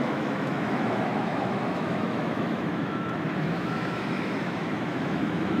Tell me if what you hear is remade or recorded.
remade